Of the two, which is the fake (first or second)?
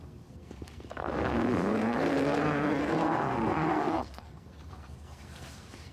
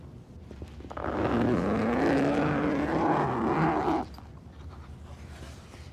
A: first